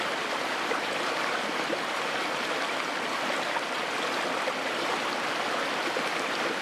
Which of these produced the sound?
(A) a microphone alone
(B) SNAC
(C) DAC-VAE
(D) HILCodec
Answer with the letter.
A